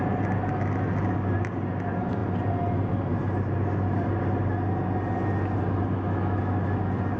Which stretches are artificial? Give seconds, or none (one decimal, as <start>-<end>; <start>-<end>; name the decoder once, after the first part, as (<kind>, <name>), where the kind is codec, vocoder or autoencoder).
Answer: none